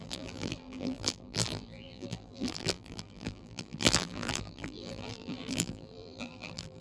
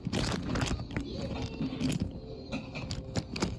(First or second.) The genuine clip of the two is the second